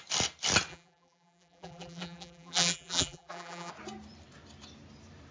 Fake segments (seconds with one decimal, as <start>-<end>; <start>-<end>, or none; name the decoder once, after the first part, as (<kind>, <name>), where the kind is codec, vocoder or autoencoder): 0.7-3.7 (vocoder, BigVGAN v2)